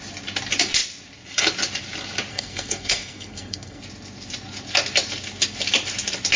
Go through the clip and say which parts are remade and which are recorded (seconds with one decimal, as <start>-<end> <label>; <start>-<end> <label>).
0.0-2.3 recorded; 2.3-3.8 remade; 3.8-6.4 recorded